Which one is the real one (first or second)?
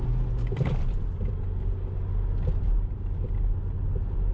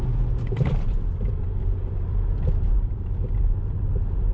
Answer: first